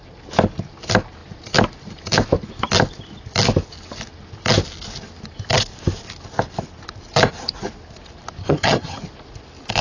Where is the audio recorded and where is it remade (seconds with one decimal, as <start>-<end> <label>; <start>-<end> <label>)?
0.0-8.4 recorded; 8.4-9.0 remade; 9.0-9.8 recorded